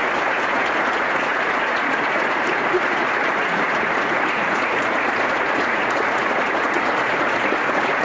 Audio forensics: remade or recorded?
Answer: remade